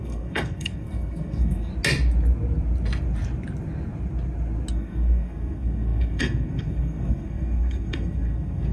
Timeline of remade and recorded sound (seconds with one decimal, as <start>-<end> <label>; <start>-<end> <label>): 0.0-1.7 remade; 1.7-4.7 recorded; 4.7-8.7 remade